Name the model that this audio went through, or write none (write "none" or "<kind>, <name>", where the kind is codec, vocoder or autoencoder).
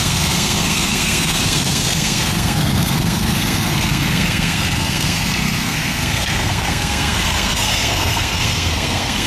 codec, SNAC